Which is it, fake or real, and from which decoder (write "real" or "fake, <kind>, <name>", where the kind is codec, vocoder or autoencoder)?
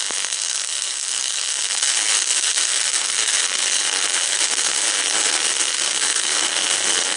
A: fake, codec, SNAC